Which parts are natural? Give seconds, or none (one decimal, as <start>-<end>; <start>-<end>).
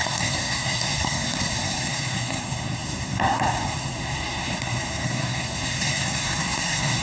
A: none